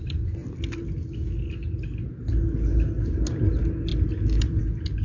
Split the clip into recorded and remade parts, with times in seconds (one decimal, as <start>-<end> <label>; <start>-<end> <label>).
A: 0.0-5.0 recorded